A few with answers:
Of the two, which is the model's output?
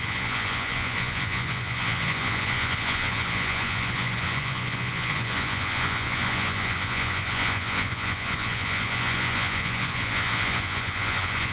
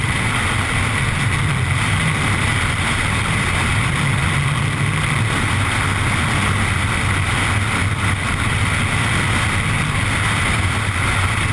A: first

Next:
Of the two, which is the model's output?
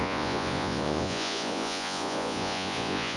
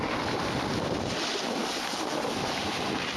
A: first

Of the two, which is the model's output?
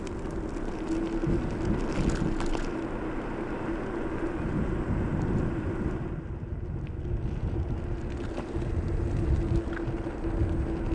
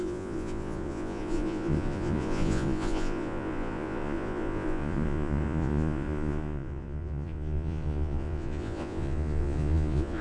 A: second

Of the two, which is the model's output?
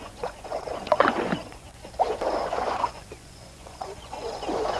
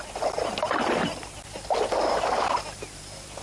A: first